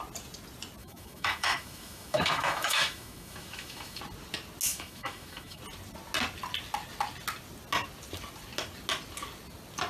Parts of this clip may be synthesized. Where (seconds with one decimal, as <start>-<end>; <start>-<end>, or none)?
0.8-4.0; 4.7-5.6